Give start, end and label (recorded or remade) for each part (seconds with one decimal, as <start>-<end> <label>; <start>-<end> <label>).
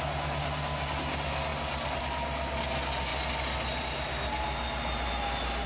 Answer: 0.0-5.7 recorded